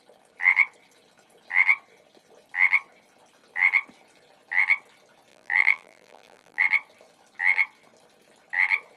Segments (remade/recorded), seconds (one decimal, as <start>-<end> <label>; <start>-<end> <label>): 0.0-5.3 recorded; 5.3-6.6 remade; 6.6-9.0 recorded